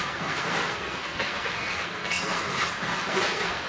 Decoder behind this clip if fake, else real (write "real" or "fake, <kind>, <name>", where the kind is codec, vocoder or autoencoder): fake, codec, SNAC